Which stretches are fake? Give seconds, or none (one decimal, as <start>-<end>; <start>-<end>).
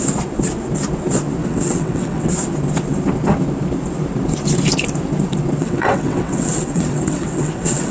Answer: 1.4-2.3; 5.6-7.9